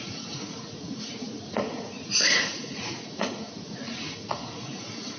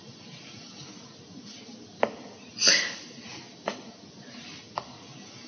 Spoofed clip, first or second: first